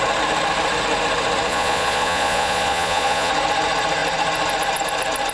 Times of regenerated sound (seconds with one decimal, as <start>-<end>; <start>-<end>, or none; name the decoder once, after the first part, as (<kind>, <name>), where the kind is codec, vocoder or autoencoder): 1.5-3.3 (vocoder, Vocos)